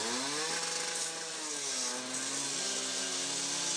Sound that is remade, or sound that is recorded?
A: recorded